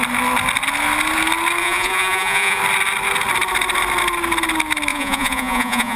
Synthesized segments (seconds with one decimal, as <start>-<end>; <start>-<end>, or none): 1.6-2.6; 4.9-6.0

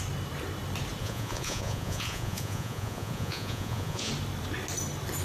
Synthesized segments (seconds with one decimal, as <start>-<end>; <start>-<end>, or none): 1.0-4.1